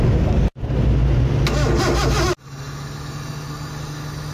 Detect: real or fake real